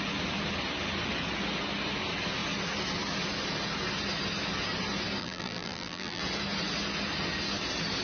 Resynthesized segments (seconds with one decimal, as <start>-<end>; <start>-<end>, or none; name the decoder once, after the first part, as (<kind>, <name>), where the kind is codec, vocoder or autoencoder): 5.2-6.2 (vocoder, BigVGAN v2)